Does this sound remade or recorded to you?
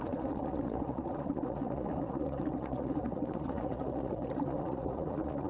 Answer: remade